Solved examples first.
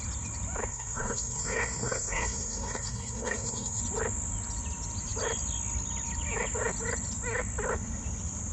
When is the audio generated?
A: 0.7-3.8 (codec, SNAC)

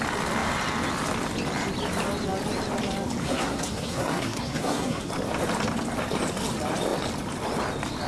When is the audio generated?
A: 3.2-5.1 (codec, SNAC)

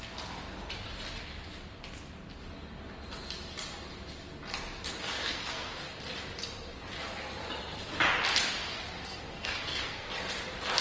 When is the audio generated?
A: 5.2-5.8 (codec, SNAC); 8.6-10.1

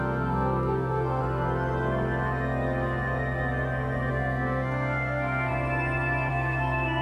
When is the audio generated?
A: 0.0-1.2 (codec, SNAC); 4.1-5.5; 6.3-7.0

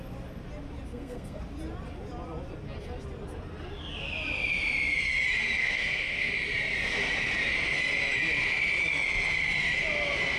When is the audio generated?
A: 0.9-1.4 (codec, SNAC); 5.6-6.3

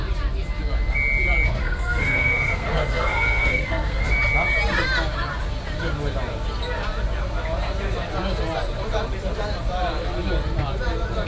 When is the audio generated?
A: 1.6-4.0 (codec, SNAC)